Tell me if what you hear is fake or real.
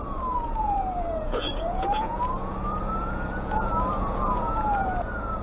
fake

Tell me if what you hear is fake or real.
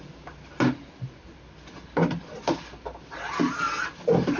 real